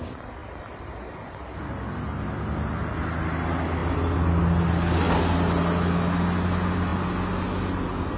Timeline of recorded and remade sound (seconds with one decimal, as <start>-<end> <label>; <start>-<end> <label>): 0.0-8.2 recorded